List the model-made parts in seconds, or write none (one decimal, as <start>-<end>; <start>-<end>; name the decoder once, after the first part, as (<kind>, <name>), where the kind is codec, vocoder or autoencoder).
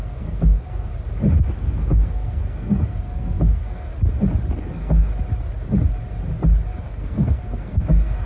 0.0-0.9 (codec, SNAC); 1.5-3.9; 4.6-5.1; 6.8-8.2